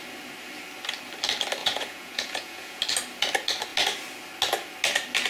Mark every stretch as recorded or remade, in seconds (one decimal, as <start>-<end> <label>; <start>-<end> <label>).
0.0-1.6 recorded; 1.6-2.8 remade; 2.8-5.3 recorded